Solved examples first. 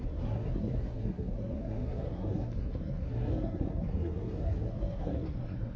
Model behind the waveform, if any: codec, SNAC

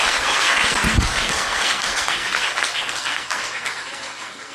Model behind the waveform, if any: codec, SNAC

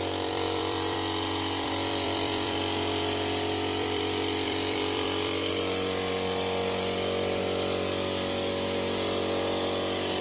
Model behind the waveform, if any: vocoder, BigVGAN v2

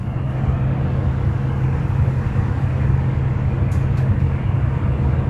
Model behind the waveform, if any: codec, DAC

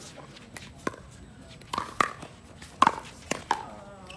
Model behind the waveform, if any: none